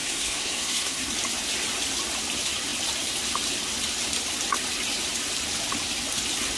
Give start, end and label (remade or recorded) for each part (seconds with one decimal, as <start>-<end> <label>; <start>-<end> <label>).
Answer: 0.0-1.1 remade; 1.1-6.6 recorded